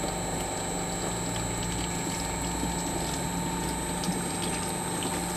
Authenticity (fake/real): real